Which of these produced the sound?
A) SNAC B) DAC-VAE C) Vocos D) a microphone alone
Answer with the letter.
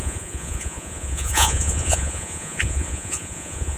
C